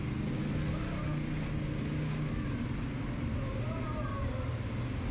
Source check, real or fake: real